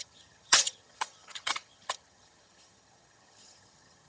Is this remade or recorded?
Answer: remade